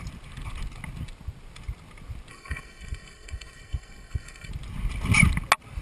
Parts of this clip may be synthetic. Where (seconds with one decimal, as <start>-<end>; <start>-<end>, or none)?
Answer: 2.3-4.5